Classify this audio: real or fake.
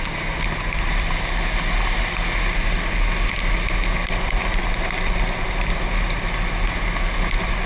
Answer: real